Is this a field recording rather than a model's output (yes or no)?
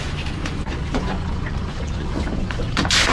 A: no